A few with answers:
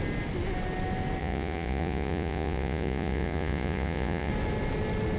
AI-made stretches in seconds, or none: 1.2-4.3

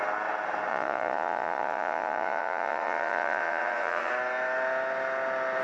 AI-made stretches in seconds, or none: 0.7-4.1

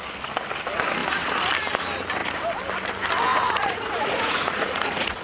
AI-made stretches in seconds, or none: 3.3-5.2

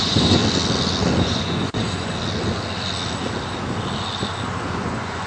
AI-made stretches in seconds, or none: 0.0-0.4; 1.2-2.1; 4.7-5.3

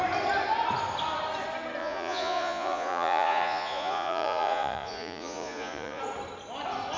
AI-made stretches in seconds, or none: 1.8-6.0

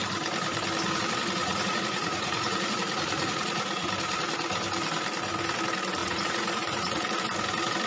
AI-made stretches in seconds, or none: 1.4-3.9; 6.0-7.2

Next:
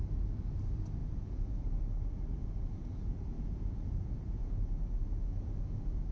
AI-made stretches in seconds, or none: 1.0-1.8; 2.4-6.1

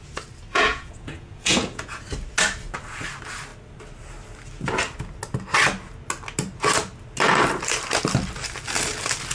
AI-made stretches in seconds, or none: 0.5-2.0